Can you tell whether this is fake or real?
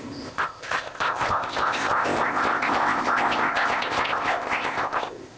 fake